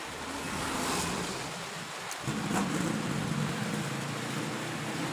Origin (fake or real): real